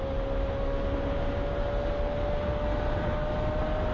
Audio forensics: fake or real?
real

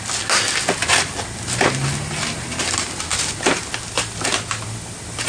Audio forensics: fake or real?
real